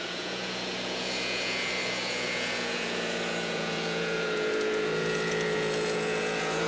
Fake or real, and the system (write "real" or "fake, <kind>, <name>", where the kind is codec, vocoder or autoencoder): fake, vocoder, Vocos